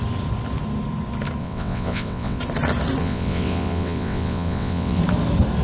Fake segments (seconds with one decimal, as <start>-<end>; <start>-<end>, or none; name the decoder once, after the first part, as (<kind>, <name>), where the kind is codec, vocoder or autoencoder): 1.4-2.4 (vocoder, WaveNeXt); 3.0-5.0

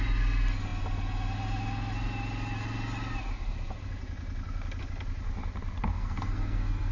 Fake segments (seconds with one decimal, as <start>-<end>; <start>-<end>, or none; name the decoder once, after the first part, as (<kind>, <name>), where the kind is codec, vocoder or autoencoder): 5.9-6.9 (codec, SNAC)

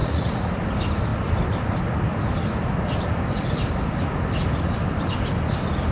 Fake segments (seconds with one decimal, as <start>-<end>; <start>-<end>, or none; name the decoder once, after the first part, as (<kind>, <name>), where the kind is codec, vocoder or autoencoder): 0.0-0.5 (vocoder, Vocos)

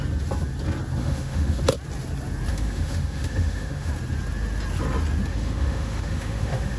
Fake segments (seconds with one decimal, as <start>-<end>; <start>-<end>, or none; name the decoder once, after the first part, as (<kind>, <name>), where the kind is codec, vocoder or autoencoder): 1.0-1.6 (autoencoder, DAC-VAE); 2.5-3.9; 5.3-6.8

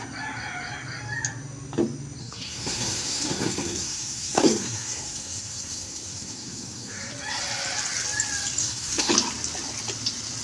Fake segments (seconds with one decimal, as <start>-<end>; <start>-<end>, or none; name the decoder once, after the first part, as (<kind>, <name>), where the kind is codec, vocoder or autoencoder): 2.2-7.1 (codec, SNAC); 8.6-9.1

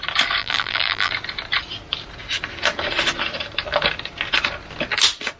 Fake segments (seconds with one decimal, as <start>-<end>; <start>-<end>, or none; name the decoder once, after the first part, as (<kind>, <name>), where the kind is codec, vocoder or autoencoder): 0.4-1.1 (vocoder, BigVGAN v2)

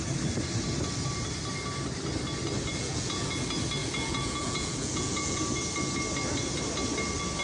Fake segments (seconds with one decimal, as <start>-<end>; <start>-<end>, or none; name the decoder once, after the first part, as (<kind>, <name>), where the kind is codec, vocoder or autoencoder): 2.7-3.4 (vocoder, Vocos); 3.8-5.4

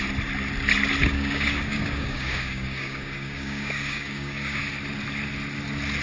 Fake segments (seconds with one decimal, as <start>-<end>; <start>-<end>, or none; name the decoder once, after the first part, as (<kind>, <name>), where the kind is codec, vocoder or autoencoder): 1.0-4.6 (codec, DAC)